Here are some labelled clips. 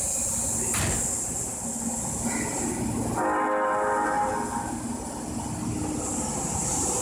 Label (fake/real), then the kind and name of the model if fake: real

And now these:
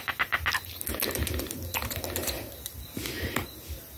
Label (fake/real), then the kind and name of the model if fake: real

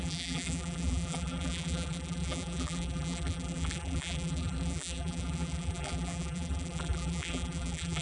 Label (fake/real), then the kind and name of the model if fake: fake, vocoder, BigVGAN v2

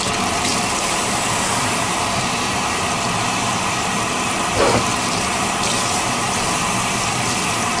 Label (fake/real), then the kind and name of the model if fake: fake, vocoder, BigVGAN v2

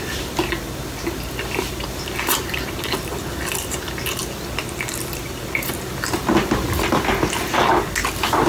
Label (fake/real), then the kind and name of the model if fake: real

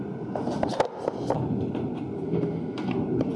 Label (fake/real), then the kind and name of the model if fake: real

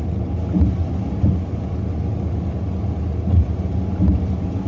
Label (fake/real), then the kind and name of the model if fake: real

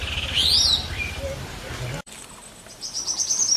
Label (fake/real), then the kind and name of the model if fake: fake, vocoder, BigVGAN v2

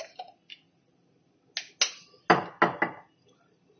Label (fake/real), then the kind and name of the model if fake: real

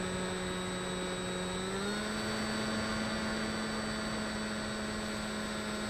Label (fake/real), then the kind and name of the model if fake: real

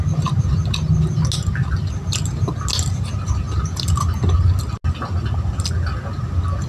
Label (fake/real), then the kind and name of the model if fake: real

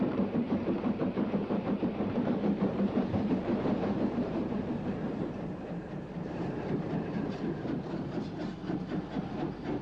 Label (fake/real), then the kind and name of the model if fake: fake, vocoder, BigVGAN v2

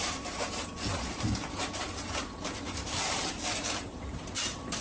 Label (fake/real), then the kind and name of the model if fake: fake, vocoder, BigVGAN v2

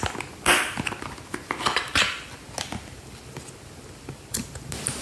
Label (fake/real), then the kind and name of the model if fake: real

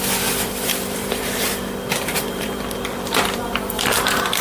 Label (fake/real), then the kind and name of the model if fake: fake, vocoder, BigVGAN v2